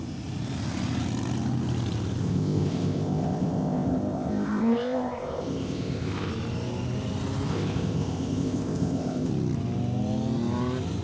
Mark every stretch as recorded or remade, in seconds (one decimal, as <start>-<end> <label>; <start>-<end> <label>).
0.0-2.2 recorded; 2.2-6.3 remade; 6.3-7.5 recorded; 7.5-9.3 remade; 9.3-11.0 recorded